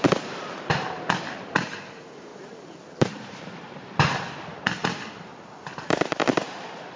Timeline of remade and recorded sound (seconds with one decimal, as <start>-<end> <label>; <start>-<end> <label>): 0.0-2.3 remade; 2.3-2.9 recorded; 2.9-4.8 remade; 4.8-5.8 recorded; 5.8-7.0 remade